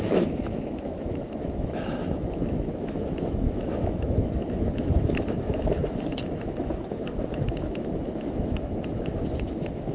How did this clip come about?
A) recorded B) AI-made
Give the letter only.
B